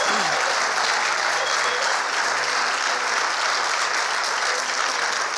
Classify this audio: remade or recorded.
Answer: recorded